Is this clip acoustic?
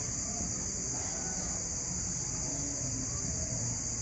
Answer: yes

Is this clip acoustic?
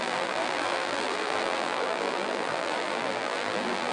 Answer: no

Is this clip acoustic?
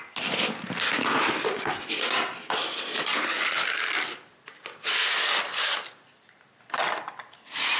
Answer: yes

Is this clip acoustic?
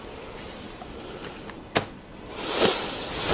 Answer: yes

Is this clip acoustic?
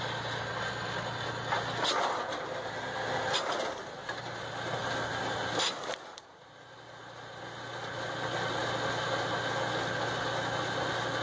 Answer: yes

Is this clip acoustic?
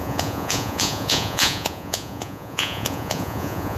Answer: no